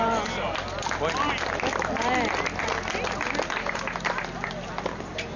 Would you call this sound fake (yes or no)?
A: no